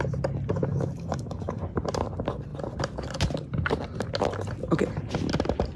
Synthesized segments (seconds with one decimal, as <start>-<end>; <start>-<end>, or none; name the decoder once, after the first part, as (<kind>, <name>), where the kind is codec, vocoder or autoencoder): 0.7-1.6 (codec, DAC)